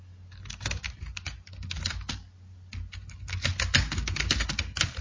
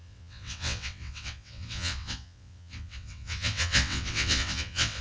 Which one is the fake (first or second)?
second